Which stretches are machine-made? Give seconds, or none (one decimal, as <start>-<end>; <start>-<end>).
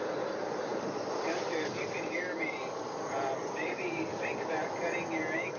none